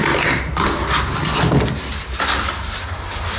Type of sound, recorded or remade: recorded